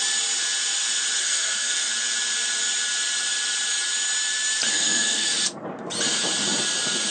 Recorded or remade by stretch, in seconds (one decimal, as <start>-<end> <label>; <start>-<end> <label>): 0.0-1.2 recorded; 1.2-1.9 remade; 1.9-4.7 recorded; 4.7-5.3 remade; 5.3-7.1 recorded

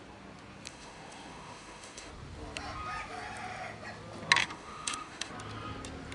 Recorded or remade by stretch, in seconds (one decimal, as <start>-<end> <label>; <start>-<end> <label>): 0.0-0.7 recorded; 0.7-2.1 remade; 2.1-4.4 recorded; 4.4-5.3 remade; 5.3-6.1 recorded